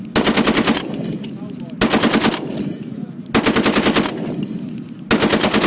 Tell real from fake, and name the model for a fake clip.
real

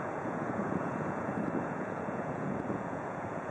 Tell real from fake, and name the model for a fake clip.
fake, vocoder, Vocos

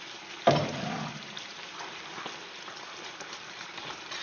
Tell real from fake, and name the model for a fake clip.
real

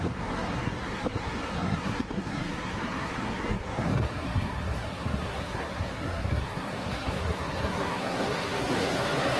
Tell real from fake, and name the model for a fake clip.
fake, codec, SNAC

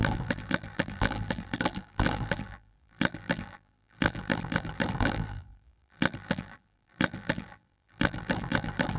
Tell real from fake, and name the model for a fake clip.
fake, vocoder, BigVGAN v2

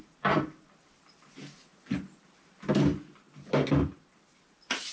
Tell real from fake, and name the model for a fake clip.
real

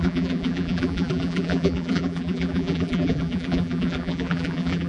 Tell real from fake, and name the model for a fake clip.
fake, vocoder, BigVGAN v2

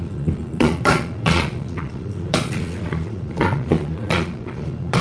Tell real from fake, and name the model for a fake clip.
fake, vocoder, Vocos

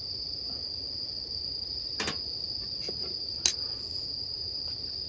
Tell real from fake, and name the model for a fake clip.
real